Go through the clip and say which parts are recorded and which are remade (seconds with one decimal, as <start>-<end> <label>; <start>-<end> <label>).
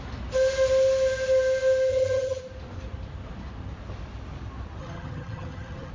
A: 0.0-1.9 recorded; 1.9-2.4 remade; 2.4-4.8 recorded; 4.8-5.9 remade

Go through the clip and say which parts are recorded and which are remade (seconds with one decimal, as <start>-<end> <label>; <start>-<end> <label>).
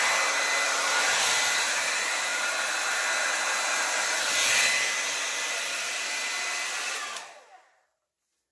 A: 0.0-8.5 recorded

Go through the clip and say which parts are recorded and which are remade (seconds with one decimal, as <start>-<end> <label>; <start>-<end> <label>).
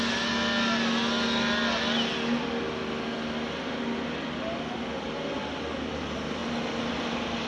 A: 0.0-7.5 recorded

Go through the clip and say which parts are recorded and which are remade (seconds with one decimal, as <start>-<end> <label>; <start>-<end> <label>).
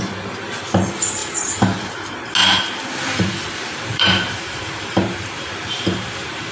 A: 0.0-1.2 recorded; 1.2-1.9 remade; 1.9-2.4 recorded; 2.4-6.5 remade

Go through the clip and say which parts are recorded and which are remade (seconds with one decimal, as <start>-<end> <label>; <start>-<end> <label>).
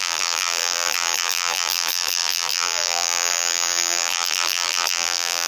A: 0.0-5.5 remade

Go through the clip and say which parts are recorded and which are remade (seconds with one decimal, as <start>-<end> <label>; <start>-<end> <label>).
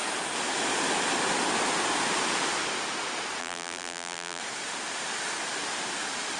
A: 0.0-3.4 recorded; 3.4-4.4 remade; 4.4-6.4 recorded